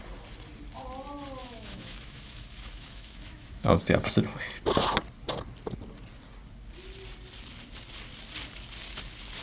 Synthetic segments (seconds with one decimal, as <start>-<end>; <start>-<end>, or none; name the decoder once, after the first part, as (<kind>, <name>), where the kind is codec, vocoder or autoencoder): 1.4-3.8 (autoencoder, DAC-VAE)